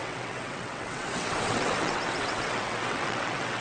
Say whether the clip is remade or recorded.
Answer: remade